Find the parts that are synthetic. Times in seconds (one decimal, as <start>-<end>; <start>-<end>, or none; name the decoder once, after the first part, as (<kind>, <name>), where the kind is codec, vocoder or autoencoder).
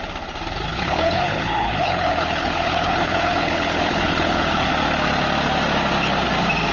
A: 0.7-4.7 (codec, HILCodec)